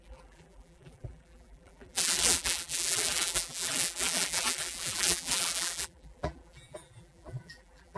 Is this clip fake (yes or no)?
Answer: yes